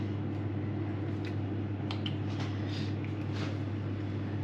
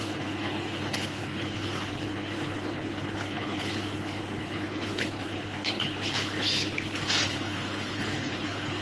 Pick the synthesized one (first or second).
second